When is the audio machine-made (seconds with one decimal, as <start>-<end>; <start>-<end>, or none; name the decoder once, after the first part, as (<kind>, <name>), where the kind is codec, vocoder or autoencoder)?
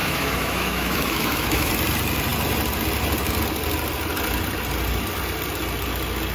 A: 0.0-1.7 (autoencoder, DAC-VAE)